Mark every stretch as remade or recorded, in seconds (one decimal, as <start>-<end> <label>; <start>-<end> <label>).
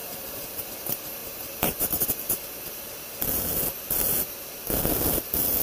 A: 0.0-0.7 remade; 0.7-1.2 recorded; 1.2-1.9 remade; 1.9-5.6 recorded